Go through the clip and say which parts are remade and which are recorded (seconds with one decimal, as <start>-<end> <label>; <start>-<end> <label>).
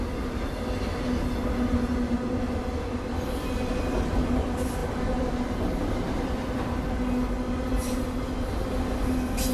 0.0-4.8 recorded; 4.8-7.0 remade; 7.0-9.5 recorded